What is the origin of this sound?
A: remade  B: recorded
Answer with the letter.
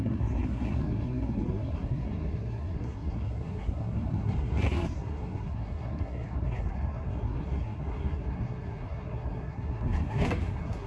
A